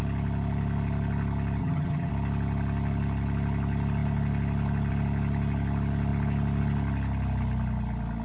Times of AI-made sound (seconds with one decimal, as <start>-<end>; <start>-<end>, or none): 1.6-2.1

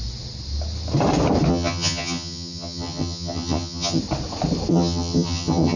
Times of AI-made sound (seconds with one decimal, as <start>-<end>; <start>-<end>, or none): 1.5-4.0; 4.7-5.8

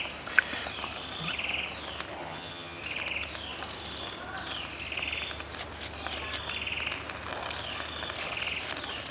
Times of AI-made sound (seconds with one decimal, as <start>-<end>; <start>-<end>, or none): 2.2-2.8

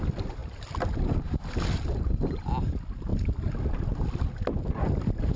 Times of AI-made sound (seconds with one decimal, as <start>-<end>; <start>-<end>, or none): none

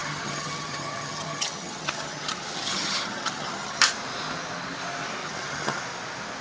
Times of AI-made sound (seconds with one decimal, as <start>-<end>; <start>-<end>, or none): 0.0-3.8; 5.2-5.8